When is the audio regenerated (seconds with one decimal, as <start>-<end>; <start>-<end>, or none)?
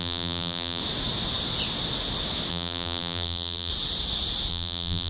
0.0-0.8; 2.5-3.7; 4.5-5.1